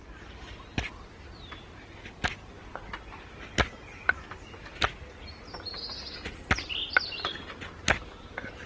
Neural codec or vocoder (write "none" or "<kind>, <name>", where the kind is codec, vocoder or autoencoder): none